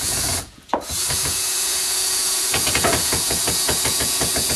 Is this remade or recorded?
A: remade